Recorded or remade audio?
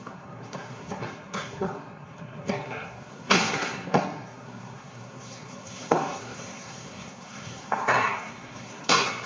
remade